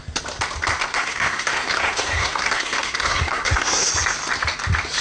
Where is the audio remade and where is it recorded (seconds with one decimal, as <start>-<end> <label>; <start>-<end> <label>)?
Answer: 0.0-0.9 recorded; 0.9-3.9 remade; 3.9-5.0 recorded